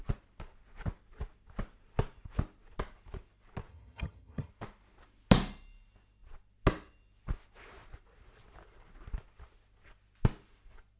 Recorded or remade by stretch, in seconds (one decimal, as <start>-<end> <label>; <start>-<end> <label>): 0.0-3.7 recorded; 3.7-4.5 remade; 4.5-11.0 recorded